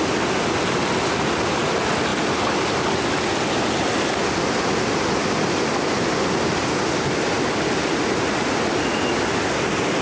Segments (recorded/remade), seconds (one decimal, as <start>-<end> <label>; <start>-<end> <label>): 0.0-10.0 recorded